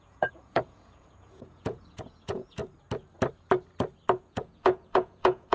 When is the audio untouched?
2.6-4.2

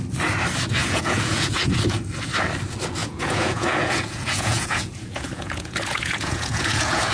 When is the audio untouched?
0.0-0.8; 1.7-3.0

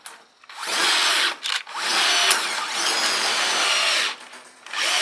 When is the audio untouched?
0.0-0.6; 1.1-5.0

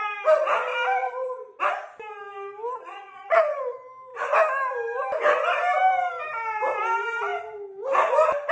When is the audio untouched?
0.0-1.0; 1.6-2.8; 3.6-8.5